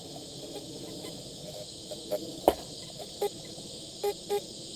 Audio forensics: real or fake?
fake